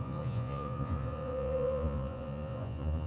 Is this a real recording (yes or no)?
no